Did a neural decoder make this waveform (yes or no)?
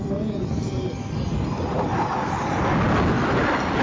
no